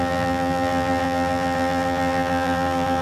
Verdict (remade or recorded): remade